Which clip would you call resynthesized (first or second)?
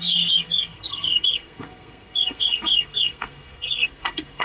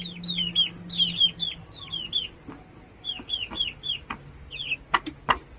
first